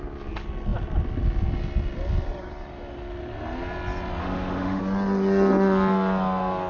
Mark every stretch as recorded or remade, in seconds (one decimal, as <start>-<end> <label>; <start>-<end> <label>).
0.0-4.2 recorded; 4.2-4.8 remade; 4.8-6.7 recorded

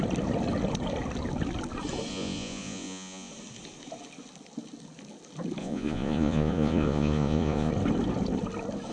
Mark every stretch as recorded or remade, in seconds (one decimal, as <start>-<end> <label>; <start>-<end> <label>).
0.0-2.1 recorded; 2.1-3.3 remade; 3.3-5.6 recorded; 5.6-7.7 remade; 7.7-8.9 recorded

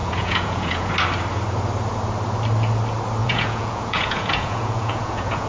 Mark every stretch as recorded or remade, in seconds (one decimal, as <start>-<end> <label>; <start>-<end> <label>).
0.0-0.9 remade; 0.9-3.2 recorded; 3.2-5.5 remade

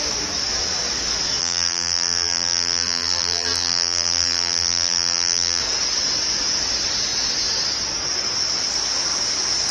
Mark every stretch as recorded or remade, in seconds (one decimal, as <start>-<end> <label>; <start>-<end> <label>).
0.0-1.4 recorded; 1.4-5.6 remade; 5.6-9.7 recorded